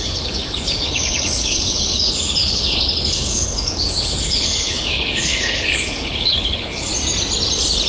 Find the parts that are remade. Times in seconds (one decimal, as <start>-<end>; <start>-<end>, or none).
0.0-6.9